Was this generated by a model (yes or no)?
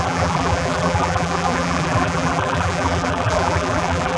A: yes